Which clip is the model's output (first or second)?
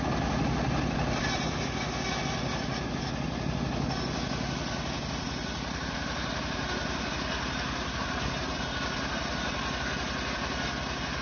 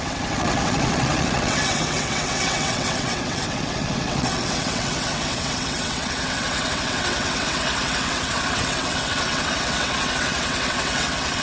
second